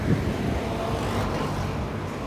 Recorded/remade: recorded